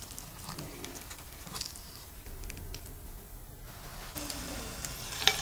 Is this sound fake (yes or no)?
no